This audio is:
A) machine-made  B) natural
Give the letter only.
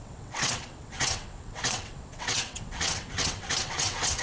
A